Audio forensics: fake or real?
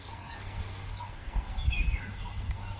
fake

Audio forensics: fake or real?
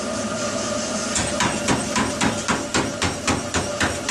real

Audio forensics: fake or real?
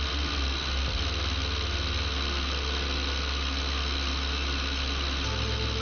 real